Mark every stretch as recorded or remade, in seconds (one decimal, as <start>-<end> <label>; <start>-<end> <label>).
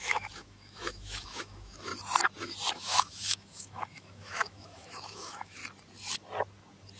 0.0-1.9 remade; 1.9-2.7 recorded; 2.7-5.6 remade; 5.6-7.0 recorded